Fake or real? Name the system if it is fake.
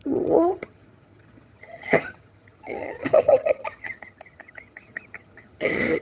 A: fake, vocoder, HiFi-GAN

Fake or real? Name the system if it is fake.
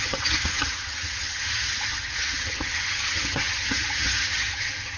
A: fake, vocoder, HiFi-GAN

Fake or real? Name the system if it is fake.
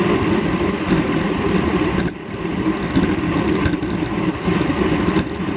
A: real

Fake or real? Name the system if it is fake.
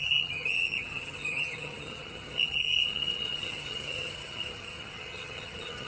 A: fake, vocoder, HiFi-GAN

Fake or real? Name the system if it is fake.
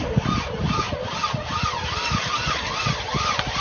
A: real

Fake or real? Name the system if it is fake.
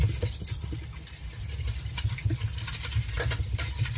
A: real